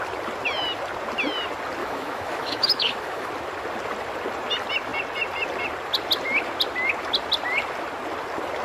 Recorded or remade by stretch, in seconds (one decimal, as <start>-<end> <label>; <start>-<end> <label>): 0.0-1.8 recorded; 1.8-3.3 remade; 3.3-8.6 recorded